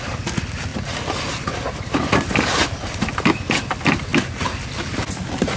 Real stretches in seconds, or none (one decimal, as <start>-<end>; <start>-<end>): 0.0-5.6